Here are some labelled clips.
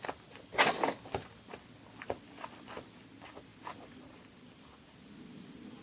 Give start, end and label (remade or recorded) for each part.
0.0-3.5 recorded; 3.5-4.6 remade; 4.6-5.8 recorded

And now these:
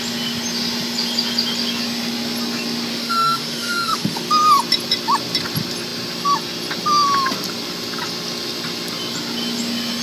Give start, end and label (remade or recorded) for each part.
0.0-2.9 recorded; 2.9-4.3 remade; 4.3-10.0 recorded

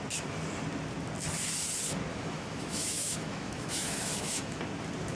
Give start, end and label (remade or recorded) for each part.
0.0-2.1 recorded; 2.1-4.6 remade; 4.6-5.1 recorded